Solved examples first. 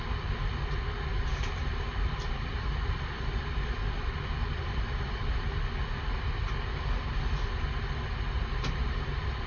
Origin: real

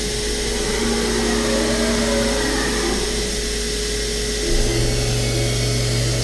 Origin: real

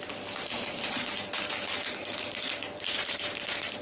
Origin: fake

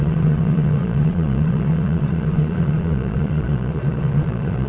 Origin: fake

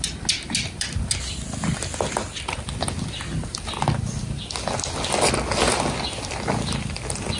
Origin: real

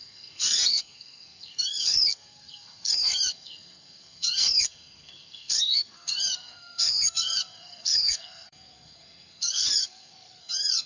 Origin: fake